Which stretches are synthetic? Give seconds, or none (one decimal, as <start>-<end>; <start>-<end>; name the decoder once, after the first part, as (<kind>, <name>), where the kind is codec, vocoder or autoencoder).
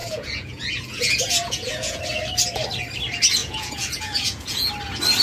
0.0-2.0 (vocoder, Vocos); 3.4-4.7